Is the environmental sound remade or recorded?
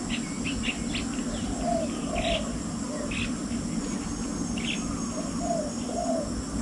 recorded